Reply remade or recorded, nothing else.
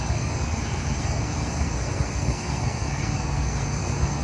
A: remade